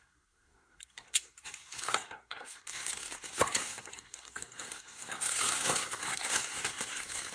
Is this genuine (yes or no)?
no